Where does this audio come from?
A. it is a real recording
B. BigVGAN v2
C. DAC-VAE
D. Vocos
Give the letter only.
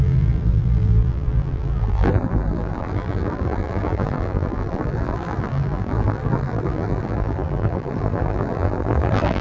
B